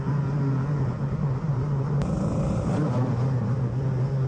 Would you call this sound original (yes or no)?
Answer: yes